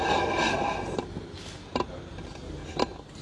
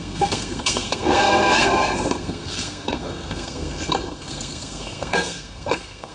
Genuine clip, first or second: first